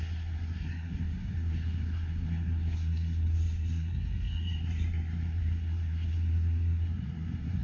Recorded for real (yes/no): no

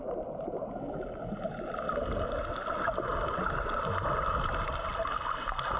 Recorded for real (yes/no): yes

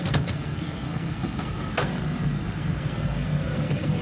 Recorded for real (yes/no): no